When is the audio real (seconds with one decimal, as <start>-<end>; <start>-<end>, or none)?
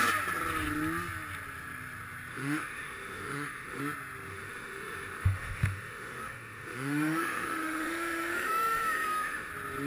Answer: 0.0-2.3; 3.8-4.3; 9.5-9.9